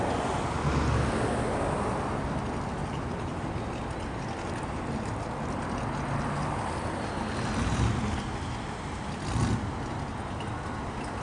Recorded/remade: recorded